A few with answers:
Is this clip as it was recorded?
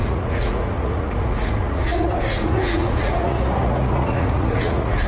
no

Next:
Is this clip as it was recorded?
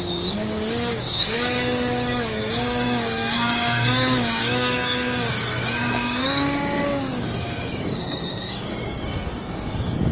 no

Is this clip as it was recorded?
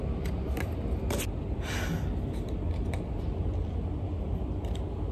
yes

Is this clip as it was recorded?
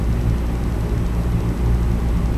yes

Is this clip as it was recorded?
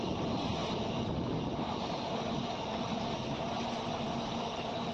yes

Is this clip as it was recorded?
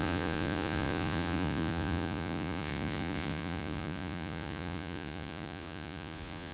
no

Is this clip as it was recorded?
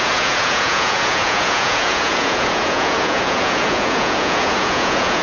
no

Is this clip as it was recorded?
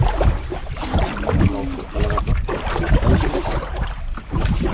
yes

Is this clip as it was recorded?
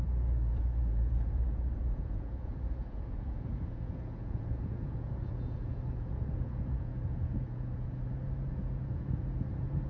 no